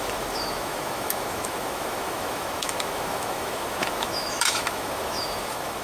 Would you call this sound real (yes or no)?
no